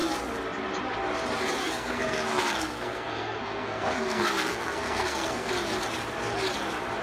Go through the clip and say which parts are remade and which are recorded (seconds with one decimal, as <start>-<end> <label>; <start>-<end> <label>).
0.0-1.6 recorded; 1.6-5.5 remade; 5.5-7.0 recorded